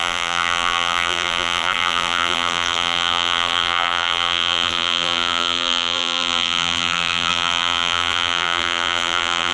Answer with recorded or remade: remade